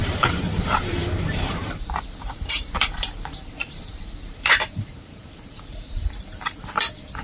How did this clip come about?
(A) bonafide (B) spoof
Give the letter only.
B